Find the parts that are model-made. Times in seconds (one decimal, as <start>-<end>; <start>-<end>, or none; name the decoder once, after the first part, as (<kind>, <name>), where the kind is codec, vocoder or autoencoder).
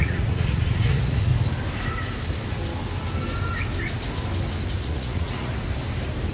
0.0-1.3 (vocoder, Vocos); 4.8-5.5